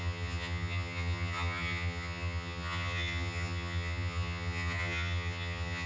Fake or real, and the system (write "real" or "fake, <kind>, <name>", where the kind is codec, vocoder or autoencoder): fake, vocoder, HiFi-GAN